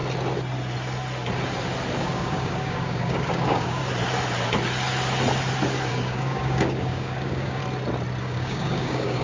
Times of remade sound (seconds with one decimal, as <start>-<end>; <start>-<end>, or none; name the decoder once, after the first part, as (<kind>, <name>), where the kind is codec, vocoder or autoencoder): 2.0-3.8 (codec, DAC); 5.9-7.6; 8.2-9.2